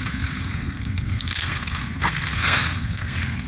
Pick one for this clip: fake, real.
fake